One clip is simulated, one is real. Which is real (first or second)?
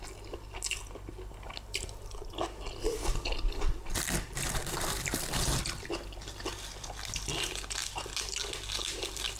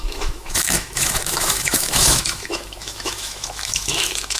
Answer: first